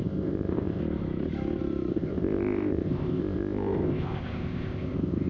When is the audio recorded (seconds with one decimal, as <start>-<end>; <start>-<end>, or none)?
0.8-1.9